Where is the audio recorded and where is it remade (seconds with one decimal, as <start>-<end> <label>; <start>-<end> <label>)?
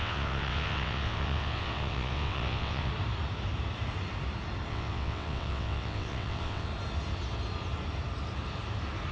0.0-2.9 remade; 2.9-4.7 recorded; 4.7-6.7 remade; 6.7-9.1 recorded